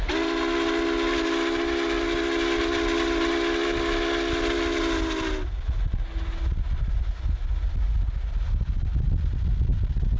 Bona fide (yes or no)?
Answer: yes